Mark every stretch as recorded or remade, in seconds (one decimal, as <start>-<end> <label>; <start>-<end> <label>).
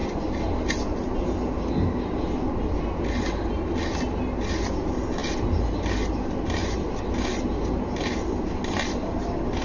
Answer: 0.0-9.6 recorded